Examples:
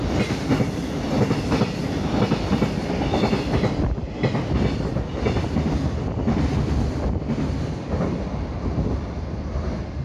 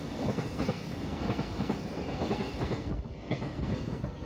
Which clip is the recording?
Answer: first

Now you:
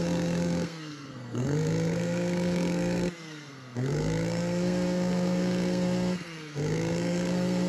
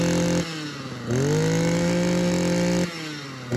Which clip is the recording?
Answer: second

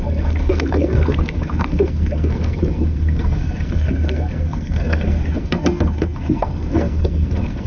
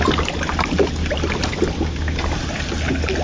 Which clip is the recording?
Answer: second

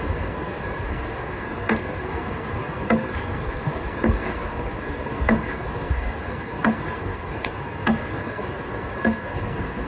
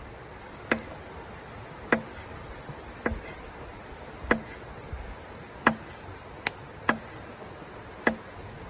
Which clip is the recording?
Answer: second